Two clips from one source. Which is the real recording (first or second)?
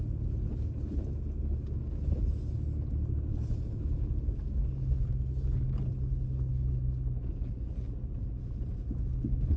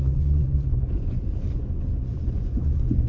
first